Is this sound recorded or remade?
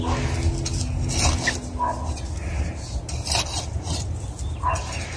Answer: recorded